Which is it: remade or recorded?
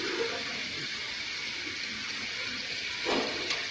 recorded